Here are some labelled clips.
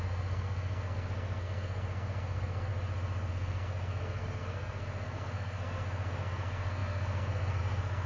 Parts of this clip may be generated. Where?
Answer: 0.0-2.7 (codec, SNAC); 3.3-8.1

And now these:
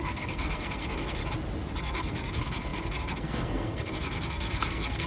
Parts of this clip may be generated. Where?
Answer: 0.0-1.2 (codec, SNAC); 1.8-5.1

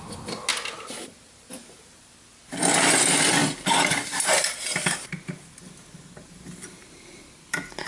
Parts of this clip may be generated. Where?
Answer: none

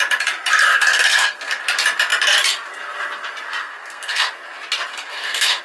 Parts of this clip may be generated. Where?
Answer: 0.7-1.6 (codec, SNAC); 3.6-4.3; 4.9-5.6

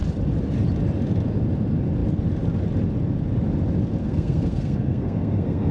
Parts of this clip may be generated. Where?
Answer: 4.0-5.7 (codec, SNAC)

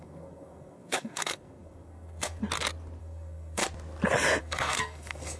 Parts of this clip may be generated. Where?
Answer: 0.0-2.4 (codec, SNAC); 3.0-3.6; 4.4-5.4